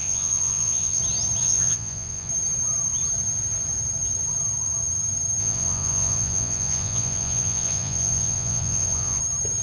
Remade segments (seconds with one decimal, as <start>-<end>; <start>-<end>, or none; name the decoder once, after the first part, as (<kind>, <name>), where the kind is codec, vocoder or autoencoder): 0.0-1.0 (vocoder, Vocos); 1.4-2.3; 5.4-9.2

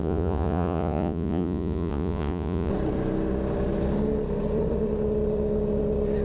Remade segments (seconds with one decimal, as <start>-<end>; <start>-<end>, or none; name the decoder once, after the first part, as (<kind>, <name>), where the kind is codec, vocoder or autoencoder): 0.0-2.7 (vocoder, Vocos)